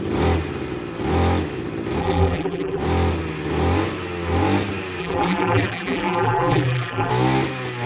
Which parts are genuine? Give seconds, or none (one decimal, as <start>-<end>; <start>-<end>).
0.0-2.0; 2.8-5.0; 7.1-7.9